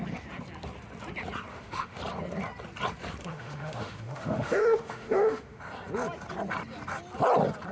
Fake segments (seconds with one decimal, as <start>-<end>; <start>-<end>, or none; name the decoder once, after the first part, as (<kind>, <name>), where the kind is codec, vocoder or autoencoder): 1.5-2.0 (autoencoder, DAC-VAE); 3.2-5.6